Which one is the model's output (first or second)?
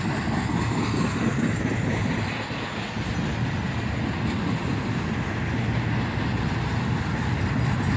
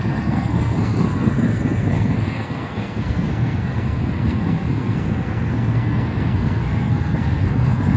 second